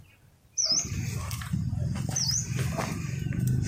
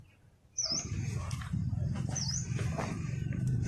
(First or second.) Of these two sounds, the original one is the first